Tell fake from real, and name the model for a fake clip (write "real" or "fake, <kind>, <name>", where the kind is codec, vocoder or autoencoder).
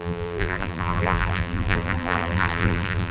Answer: fake, vocoder, BigVGAN v2